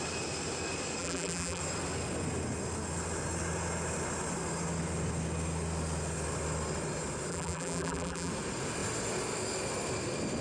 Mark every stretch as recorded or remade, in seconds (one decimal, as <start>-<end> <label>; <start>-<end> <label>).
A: 0.0-1.0 recorded; 1.0-1.6 remade; 1.6-7.3 recorded; 7.3-8.3 remade; 8.3-10.4 recorded